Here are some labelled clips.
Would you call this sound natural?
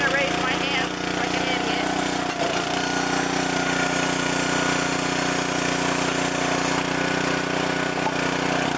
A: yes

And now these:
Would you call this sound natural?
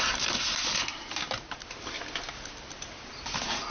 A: yes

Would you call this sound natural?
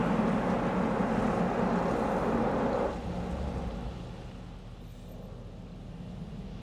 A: yes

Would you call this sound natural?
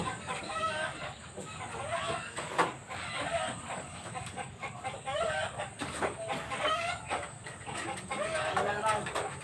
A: no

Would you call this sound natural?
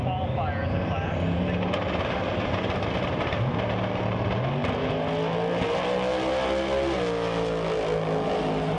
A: yes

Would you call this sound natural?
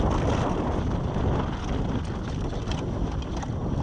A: yes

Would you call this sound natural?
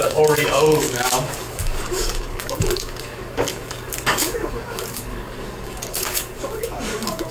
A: no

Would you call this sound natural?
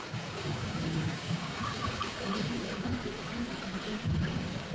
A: no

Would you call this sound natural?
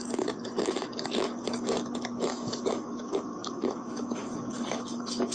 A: no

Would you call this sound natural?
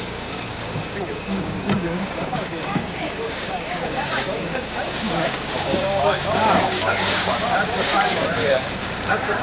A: no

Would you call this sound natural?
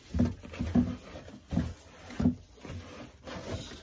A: yes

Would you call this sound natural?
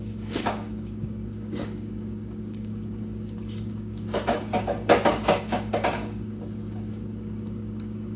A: no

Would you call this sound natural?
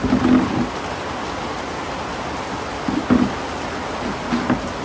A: yes